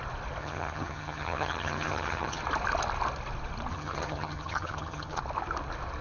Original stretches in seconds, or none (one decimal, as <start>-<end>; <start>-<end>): 0.0-0.4; 2.4-3.7; 5.2-6.0